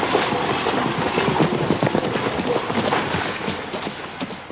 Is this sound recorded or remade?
recorded